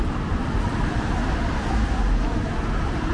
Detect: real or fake real